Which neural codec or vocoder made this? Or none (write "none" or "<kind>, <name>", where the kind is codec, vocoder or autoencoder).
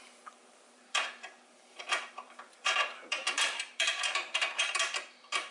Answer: vocoder, BigVGAN v2